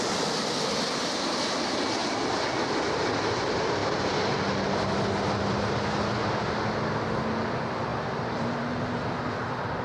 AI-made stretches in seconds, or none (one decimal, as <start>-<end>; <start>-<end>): 7.9-8.9